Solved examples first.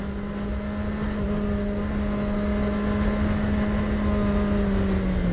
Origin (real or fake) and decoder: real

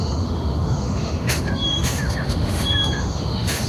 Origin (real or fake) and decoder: fake, autoencoder, DAC-VAE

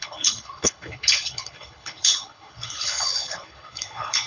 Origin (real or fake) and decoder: fake, codec, HILCodec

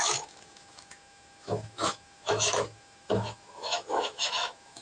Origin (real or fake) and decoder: fake, autoencoder, DAC-VAE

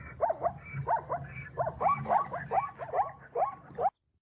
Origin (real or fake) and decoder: real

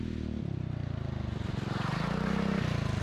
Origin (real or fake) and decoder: real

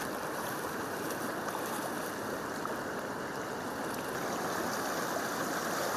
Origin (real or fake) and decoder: fake, vocoder, BigVGAN v2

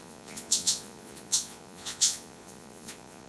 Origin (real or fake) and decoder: fake, vocoder, Vocos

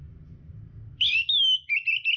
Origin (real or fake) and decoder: real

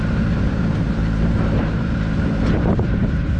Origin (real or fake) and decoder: fake, vocoder, BigVGAN v2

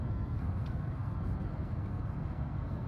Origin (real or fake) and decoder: fake, codec, SNAC